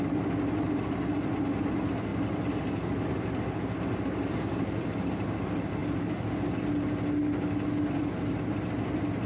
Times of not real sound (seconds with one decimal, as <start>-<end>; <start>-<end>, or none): none